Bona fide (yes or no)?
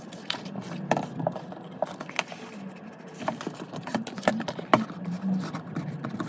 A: yes